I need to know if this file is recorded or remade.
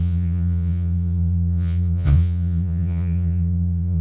remade